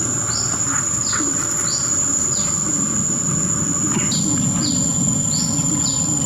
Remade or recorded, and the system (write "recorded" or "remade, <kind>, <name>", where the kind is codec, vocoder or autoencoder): recorded